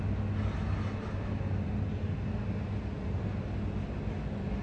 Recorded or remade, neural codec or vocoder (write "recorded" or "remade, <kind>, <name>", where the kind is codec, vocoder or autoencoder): recorded